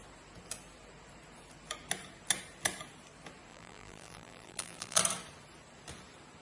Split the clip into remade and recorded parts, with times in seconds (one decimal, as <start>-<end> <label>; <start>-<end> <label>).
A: 0.0-3.5 recorded; 3.5-5.0 remade; 5.0-6.4 recorded